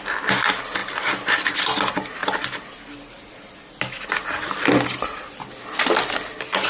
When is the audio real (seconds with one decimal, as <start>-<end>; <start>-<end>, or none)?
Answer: 0.0-6.7